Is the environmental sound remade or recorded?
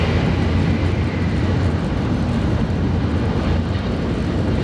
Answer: recorded